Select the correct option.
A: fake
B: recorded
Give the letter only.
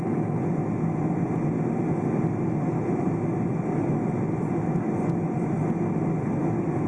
B